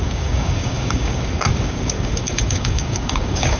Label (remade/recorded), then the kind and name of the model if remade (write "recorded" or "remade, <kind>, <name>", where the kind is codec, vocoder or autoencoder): remade, codec, DAC